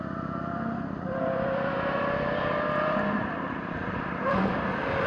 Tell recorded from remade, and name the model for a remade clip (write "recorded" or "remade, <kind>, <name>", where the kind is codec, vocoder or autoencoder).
remade, vocoder, BigVGAN v2